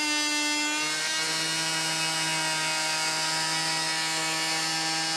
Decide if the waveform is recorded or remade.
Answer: recorded